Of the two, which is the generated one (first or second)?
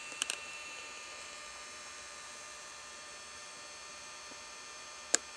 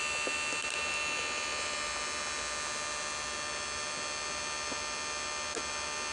first